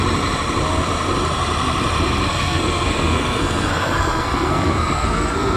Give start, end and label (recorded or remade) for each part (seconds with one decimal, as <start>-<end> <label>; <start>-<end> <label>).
0.0-2.3 recorded; 2.3-5.6 remade